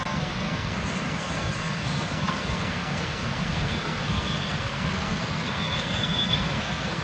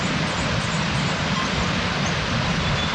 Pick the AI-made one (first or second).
first